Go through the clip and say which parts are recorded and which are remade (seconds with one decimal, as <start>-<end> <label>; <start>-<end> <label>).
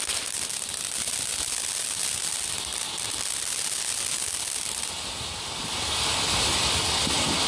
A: 0.0-7.5 recorded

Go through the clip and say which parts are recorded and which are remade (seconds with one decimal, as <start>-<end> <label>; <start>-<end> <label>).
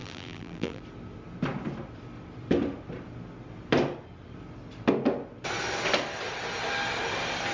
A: 0.0-0.8 remade; 0.8-7.5 recorded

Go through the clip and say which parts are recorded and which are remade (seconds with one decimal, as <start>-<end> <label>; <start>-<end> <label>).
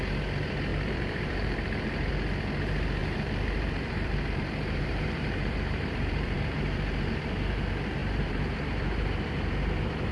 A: 0.0-0.7 recorded; 0.7-2.1 remade; 2.1-3.0 recorded; 3.0-7.6 remade; 7.6-8.0 recorded; 8.0-10.1 remade